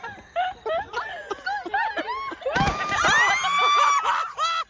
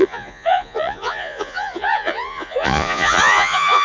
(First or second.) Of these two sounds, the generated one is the second